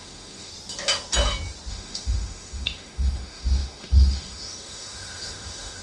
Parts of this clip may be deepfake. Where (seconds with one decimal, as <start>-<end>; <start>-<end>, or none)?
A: 0.0-0.5; 1.7-5.8